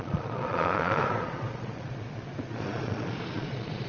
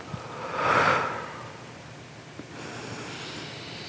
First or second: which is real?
second